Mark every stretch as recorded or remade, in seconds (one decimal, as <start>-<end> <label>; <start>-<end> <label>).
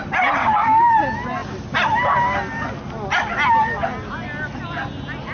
0.0-0.4 recorded; 0.4-0.9 remade; 0.9-5.3 recorded